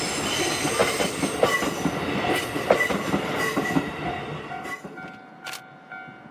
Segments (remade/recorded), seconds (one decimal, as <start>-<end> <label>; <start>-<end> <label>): 0.0-6.3 recorded